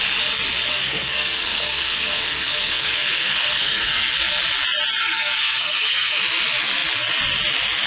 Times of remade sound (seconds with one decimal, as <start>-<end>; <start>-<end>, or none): 0.7-4.1; 5.0-6.2